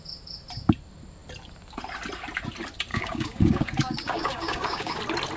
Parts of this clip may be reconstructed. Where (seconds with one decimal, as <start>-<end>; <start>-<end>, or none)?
2.9-5.0